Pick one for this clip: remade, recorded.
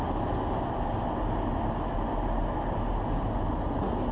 recorded